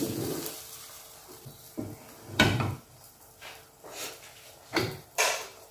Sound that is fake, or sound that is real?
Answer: fake